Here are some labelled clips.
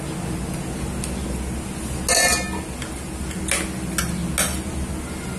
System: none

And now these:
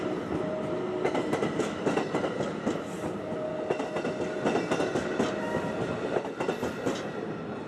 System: none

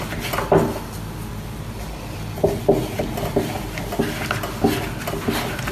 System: none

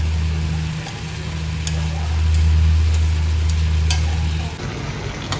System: none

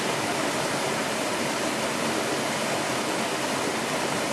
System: none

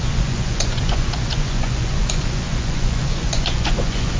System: vocoder, Vocos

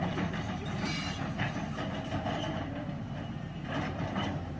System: vocoder, BigVGAN v2